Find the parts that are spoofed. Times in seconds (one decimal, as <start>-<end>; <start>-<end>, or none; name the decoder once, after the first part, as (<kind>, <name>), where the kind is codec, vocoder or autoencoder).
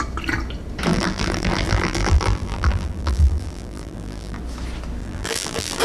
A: 0.9-4.4 (vocoder, BigVGAN v2); 5.0-5.8